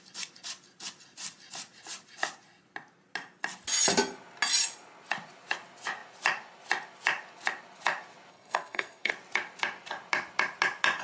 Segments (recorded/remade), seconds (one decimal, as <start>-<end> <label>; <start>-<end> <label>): 0.0-8.3 recorded; 8.3-9.1 remade; 9.1-11.0 recorded